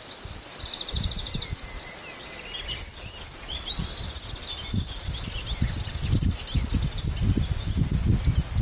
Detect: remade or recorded recorded